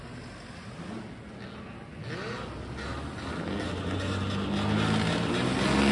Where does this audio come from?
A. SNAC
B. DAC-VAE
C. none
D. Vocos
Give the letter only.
C